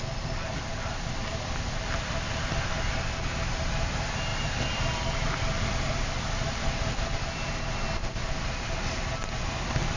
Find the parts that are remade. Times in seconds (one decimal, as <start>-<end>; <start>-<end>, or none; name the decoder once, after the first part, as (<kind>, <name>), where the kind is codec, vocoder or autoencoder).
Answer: 4.3-6.3 (vocoder, BigVGAN v2)